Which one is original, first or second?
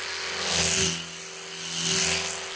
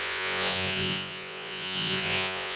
first